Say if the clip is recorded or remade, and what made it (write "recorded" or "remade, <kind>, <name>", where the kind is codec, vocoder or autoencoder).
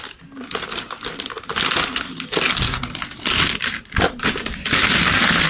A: recorded